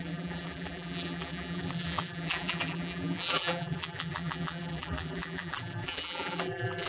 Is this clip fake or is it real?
fake